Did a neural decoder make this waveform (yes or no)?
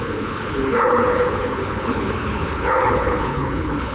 yes